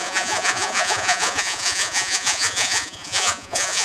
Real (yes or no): no